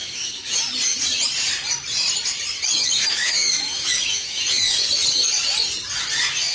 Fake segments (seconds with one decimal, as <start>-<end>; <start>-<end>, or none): 0.0-0.6; 2.7-4.4